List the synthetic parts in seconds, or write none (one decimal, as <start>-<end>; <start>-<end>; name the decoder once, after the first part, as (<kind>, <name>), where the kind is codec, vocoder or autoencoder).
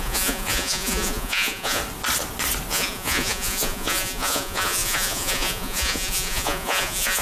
0.0-1.8 (vocoder, Vocos); 2.7-7.2